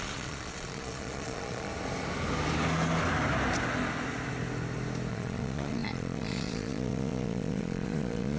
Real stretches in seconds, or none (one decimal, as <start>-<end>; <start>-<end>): 1.7-5.1